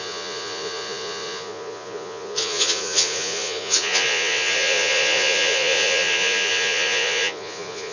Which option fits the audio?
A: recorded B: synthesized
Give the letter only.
B